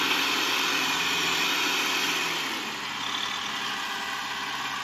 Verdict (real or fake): real